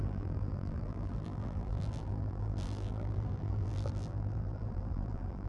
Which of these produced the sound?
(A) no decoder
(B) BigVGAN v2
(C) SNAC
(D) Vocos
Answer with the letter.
B